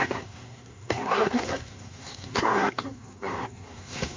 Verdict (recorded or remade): remade